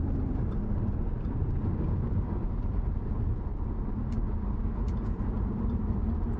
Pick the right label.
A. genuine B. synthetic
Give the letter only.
B